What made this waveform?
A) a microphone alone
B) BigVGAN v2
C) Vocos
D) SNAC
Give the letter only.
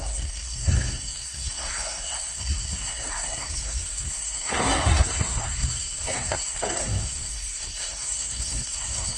D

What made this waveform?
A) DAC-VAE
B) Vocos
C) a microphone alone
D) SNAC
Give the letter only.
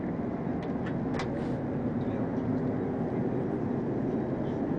C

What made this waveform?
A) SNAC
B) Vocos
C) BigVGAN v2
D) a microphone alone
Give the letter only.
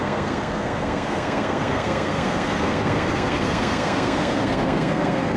A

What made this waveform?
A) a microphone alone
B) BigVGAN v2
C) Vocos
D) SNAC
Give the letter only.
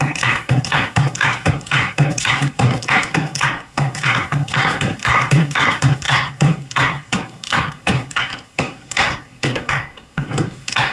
D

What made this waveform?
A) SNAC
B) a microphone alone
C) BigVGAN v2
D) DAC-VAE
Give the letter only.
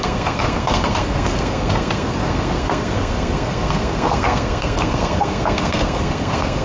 A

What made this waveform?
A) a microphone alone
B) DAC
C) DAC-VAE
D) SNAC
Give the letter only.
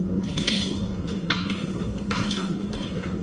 D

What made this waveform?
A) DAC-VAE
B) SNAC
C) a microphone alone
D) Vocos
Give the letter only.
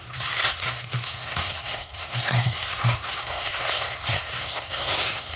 B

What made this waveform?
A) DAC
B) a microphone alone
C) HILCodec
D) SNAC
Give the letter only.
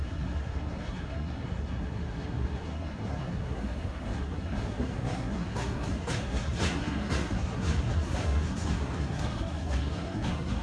D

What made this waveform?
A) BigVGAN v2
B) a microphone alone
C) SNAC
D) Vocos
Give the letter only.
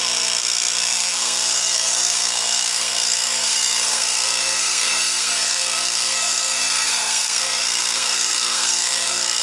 C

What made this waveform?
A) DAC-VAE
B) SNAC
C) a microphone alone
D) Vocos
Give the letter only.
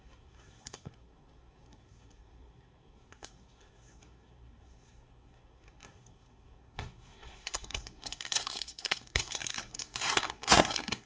B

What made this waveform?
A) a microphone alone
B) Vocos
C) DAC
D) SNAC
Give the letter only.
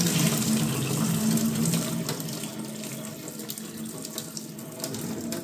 A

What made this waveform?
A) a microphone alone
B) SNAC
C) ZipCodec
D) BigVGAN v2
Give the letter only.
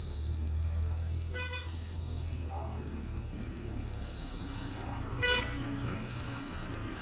B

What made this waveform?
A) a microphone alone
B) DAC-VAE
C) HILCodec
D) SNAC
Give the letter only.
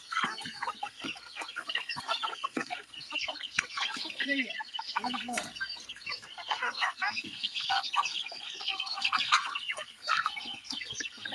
D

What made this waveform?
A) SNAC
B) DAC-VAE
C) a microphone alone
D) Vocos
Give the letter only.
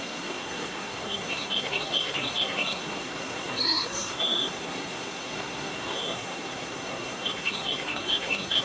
A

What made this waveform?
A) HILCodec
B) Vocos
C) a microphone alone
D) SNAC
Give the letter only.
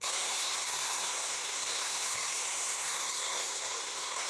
D